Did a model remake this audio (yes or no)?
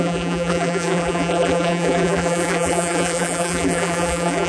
yes